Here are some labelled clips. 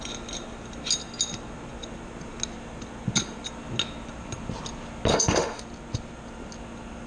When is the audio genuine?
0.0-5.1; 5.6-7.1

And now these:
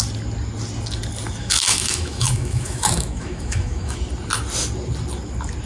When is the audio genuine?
0.0-1.4; 4.0-5.7